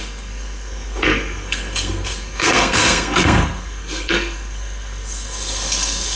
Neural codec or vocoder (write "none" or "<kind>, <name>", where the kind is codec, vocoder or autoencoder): codec, SNAC